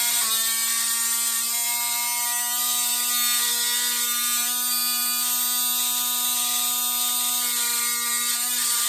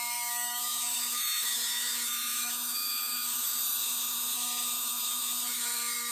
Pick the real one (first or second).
first